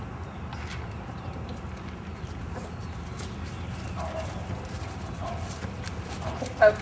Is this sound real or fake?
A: real